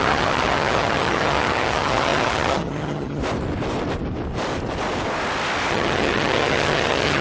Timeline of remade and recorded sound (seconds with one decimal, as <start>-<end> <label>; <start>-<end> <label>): 0.0-3.2 remade; 3.2-5.7 recorded; 5.7-7.2 remade